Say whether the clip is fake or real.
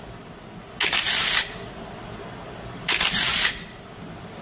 real